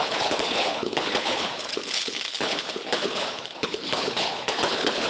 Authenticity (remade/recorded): remade